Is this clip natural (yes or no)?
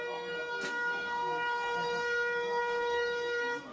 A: no